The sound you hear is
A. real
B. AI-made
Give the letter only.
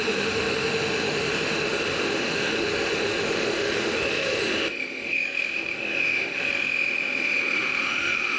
B